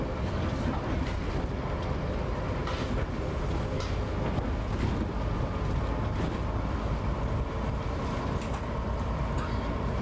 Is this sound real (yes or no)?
yes